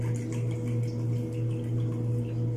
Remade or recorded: recorded